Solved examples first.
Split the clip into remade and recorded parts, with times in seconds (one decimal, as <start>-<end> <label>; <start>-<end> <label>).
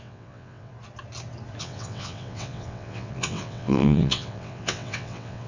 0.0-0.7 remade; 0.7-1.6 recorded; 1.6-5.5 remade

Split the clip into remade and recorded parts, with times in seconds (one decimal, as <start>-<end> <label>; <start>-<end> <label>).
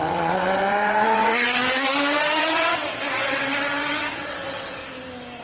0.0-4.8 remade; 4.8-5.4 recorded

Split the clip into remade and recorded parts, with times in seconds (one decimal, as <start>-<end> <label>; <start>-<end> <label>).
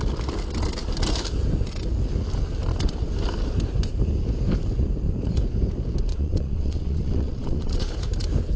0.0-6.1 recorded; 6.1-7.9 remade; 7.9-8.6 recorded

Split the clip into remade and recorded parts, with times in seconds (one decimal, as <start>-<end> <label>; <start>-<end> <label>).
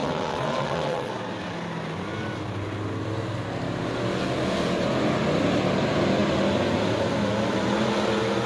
0.0-1.1 remade; 1.1-8.5 recorded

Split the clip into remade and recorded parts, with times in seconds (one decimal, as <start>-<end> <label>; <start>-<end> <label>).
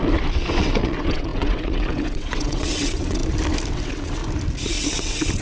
0.0-0.6 recorded; 0.6-3.2 remade; 3.2-3.7 recorded; 3.7-4.2 remade; 4.2-4.7 recorded; 4.7-5.4 remade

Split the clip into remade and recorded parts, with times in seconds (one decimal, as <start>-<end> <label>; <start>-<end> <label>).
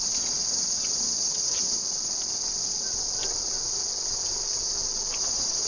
0.0-1.8 remade; 1.8-5.2 recorded; 5.2-5.7 remade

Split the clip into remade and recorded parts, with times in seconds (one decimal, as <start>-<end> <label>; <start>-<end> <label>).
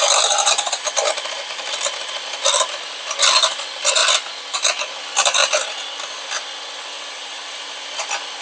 0.0-8.4 recorded